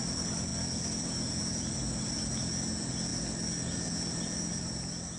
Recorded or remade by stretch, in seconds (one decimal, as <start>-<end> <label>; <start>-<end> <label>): 0.0-5.2 recorded